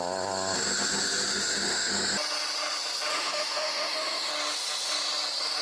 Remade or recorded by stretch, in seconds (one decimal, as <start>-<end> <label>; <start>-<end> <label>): 0.0-1.3 recorded; 1.3-1.9 remade; 1.9-3.1 recorded; 3.1-4.3 remade; 4.3-5.6 recorded